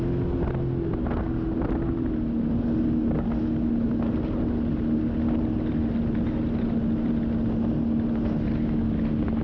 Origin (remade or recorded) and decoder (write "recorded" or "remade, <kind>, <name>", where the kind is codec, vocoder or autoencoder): recorded